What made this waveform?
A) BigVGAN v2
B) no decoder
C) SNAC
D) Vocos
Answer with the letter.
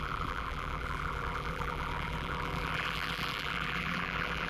A